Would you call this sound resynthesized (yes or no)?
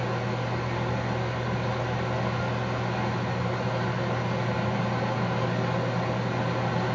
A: no